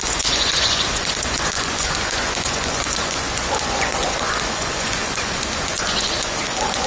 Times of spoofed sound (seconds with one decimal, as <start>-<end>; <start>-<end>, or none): 0.0-6.9